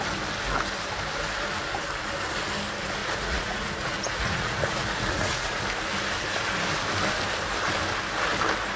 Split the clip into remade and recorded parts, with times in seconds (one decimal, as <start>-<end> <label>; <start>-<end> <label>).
0.0-3.0 recorded; 3.0-5.6 remade; 5.6-8.8 recorded